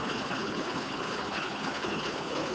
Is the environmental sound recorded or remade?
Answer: remade